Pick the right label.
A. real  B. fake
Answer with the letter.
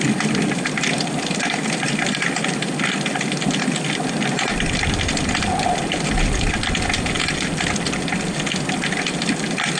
A